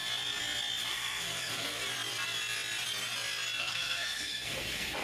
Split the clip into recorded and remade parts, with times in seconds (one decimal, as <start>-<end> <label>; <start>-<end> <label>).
0.0-0.9 recorded; 0.9-1.8 remade; 1.8-3.6 recorded; 3.6-5.0 remade